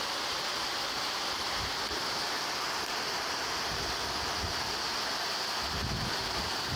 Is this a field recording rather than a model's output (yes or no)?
yes